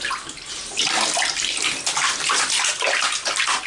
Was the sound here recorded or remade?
recorded